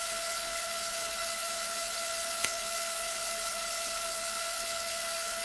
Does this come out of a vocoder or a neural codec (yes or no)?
yes